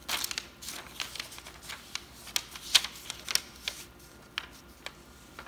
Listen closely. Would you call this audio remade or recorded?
recorded